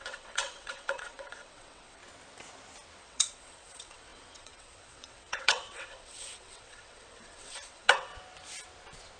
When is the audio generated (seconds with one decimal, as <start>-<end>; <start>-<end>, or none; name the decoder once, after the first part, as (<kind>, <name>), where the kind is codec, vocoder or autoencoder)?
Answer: 0.0-2.0 (vocoder, WaveNeXt); 3.0-8.1